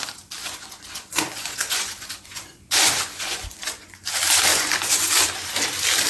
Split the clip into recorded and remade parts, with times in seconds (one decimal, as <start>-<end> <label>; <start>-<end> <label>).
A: 0.0-0.4 recorded; 0.4-4.1 remade; 4.1-4.5 recorded; 4.5-5.1 remade; 5.1-6.1 recorded